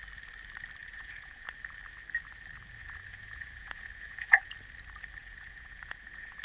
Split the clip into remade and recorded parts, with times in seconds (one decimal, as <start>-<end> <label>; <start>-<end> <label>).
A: 0.0-0.8 recorded; 0.8-1.5 remade; 1.5-2.8 recorded; 2.8-4.5 remade; 4.5-5.2 recorded; 5.2-6.4 remade